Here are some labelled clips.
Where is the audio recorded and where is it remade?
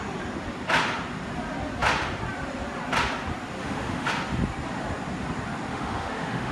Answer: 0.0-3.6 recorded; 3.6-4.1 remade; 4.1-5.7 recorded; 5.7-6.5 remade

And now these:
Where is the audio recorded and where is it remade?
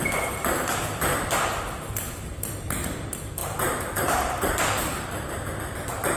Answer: 0.0-3.4 recorded; 3.4-5.5 remade; 5.5-6.2 recorded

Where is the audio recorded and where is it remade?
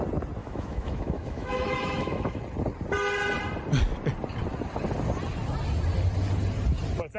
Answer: 0.0-0.4 recorded; 0.4-2.4 remade; 2.4-7.2 recorded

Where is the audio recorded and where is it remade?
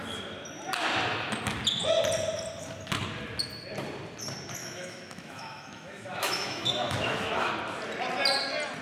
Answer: 0.0-4.6 recorded; 4.6-7.5 remade; 7.5-8.8 recorded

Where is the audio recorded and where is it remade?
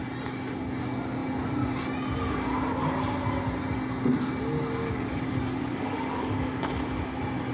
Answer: 0.0-4.8 recorded; 4.8-6.6 remade; 6.6-7.5 recorded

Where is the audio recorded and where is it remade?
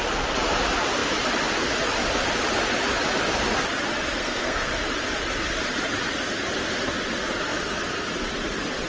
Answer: 0.0-4.2 recorded; 4.2-4.7 remade; 4.7-8.9 recorded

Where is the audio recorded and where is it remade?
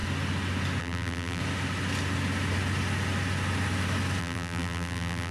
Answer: 0.0-0.8 recorded; 0.8-1.4 remade; 1.4-4.2 recorded; 4.2-5.3 remade